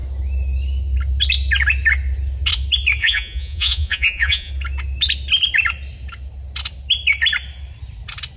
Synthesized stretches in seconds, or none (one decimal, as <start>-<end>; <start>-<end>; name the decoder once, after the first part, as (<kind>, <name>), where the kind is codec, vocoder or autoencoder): 3.0-4.5 (vocoder, Vocos)

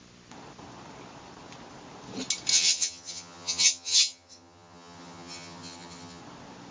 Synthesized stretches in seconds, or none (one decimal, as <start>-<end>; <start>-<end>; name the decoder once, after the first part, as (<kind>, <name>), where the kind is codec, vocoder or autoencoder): 2.5-6.2 (vocoder, HiFi-GAN)

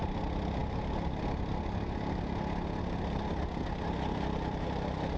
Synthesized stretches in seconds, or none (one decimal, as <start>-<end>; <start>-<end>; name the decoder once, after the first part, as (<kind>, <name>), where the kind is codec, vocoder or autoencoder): none

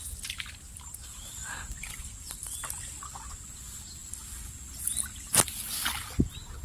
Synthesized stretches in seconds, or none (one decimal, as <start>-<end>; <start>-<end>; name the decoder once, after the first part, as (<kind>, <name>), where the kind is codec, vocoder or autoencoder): 1.4-2.8 (vocoder, BigVGAN v2)

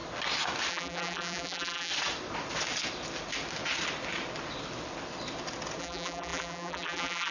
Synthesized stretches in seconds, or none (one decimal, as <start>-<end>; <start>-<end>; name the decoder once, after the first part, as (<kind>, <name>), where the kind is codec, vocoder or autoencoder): 0.7-1.9 (vocoder, BigVGAN v2); 5.8-7.3

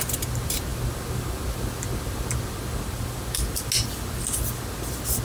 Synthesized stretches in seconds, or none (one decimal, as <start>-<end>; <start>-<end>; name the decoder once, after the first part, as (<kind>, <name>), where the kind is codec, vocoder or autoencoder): none